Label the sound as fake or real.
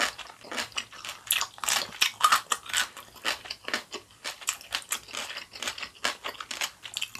real